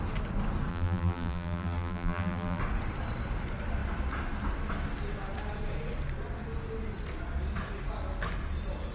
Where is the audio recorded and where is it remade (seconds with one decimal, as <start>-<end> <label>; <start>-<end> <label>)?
0.0-0.7 recorded; 0.7-2.6 remade; 2.6-8.9 recorded